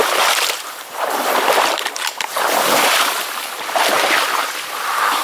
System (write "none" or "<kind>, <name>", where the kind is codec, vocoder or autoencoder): vocoder, BigVGAN v2